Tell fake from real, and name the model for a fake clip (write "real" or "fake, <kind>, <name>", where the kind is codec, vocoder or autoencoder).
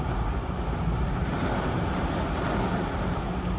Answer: real